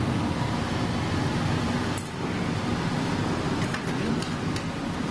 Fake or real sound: real